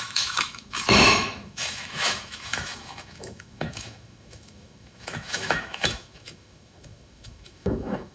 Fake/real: fake